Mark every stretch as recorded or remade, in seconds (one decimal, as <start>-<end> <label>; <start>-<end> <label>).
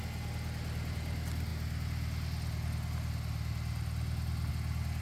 0.0-5.0 recorded